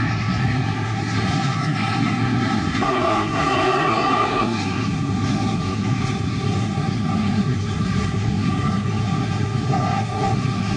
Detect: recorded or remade remade